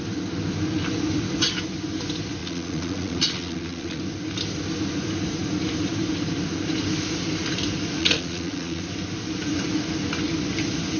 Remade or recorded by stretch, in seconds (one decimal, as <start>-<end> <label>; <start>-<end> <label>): 0.0-2.4 recorded; 2.4-4.0 remade; 4.0-8.0 recorded; 8.0-8.8 remade; 8.8-11.0 recorded